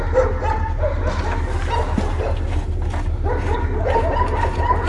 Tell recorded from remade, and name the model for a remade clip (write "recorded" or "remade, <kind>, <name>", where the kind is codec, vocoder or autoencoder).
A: recorded